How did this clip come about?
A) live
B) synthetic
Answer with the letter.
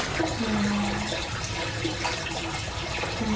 A